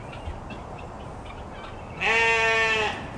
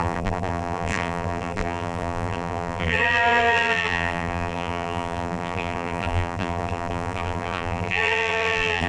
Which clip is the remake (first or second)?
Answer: second